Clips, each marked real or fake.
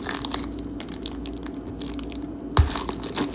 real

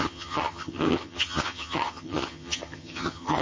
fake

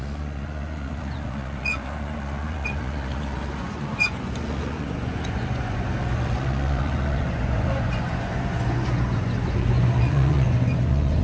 fake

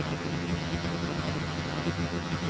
fake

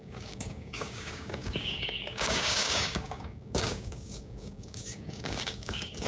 fake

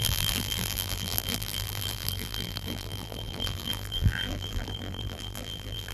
fake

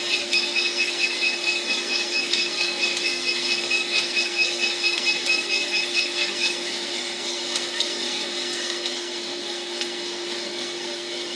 fake